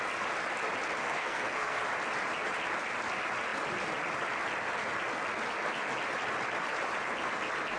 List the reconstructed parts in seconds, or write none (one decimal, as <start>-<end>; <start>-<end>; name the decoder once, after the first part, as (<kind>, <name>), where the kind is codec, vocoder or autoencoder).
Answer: 1.0-1.8 (codec, SNAC)